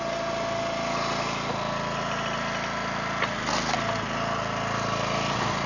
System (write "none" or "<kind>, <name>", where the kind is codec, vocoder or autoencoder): none